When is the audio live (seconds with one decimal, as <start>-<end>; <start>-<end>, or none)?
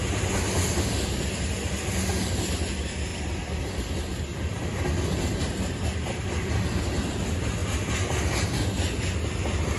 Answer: 0.0-3.1; 6.8-9.8